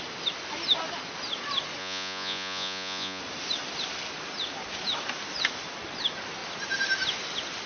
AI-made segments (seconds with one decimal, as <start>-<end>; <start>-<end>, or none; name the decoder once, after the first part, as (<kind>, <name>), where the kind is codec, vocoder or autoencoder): 1.8-3.2 (vocoder, Vocos)